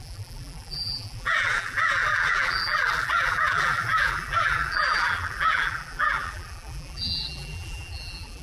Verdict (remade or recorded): remade